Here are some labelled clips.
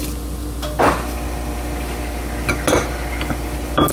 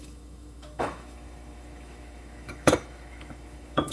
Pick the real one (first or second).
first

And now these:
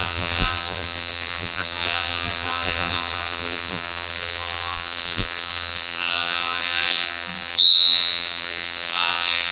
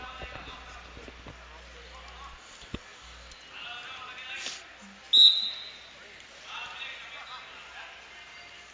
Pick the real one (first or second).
second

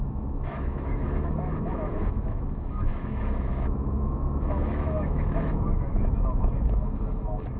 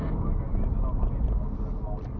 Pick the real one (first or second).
second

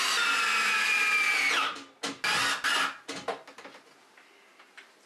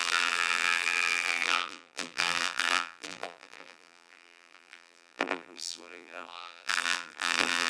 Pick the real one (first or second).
first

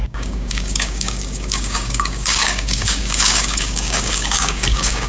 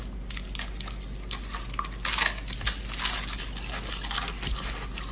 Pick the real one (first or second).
second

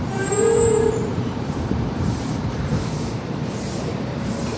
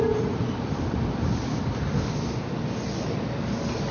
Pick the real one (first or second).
second